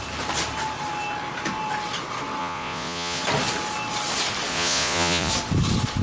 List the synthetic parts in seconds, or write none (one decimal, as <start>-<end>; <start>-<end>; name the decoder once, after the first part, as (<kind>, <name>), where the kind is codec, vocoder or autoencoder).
2.4-3.2 (vocoder, Vocos); 4.5-5.3